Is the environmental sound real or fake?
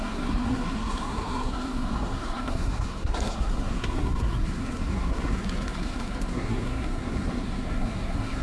fake